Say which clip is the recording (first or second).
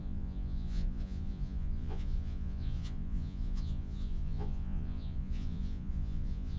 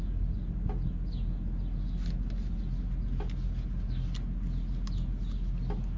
second